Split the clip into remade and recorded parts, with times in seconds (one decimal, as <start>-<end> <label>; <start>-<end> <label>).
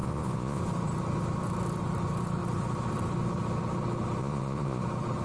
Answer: 0.0-0.6 remade; 0.6-4.2 recorded; 4.2-4.8 remade; 4.8-5.2 recorded